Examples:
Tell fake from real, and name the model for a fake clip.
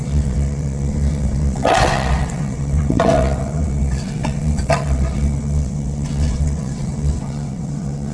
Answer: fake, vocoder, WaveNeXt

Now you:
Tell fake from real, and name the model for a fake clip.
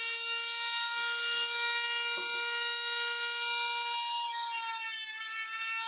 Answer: real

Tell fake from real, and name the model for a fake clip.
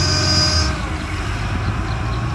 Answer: real